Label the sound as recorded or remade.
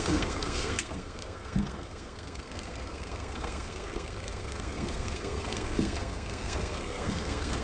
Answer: remade